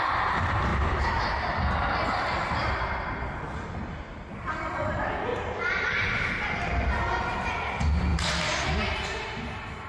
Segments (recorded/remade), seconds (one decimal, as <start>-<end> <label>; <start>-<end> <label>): 0.0-5.3 recorded; 5.3-6.4 remade; 6.4-9.9 recorded